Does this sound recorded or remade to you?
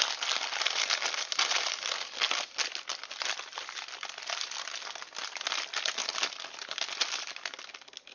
recorded